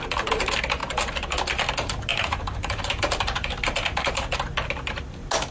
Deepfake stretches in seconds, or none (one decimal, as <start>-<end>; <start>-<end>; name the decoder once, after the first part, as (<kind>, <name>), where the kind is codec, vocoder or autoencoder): 0.8-1.4 (vocoder, BigVGAN v2); 2.1-3.6